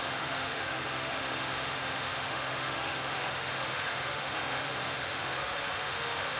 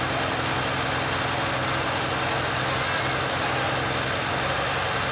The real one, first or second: second